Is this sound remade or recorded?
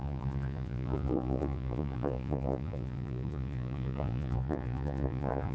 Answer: remade